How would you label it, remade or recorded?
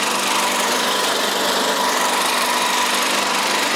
recorded